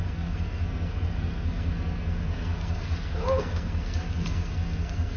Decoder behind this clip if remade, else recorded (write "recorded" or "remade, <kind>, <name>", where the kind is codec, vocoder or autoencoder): remade, codec, SNAC